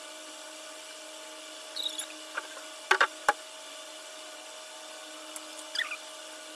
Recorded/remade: recorded